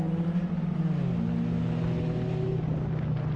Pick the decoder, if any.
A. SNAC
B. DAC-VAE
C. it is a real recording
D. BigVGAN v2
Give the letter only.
C